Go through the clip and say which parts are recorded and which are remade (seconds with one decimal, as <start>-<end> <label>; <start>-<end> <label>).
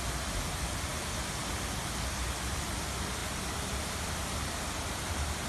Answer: 0.0-5.5 recorded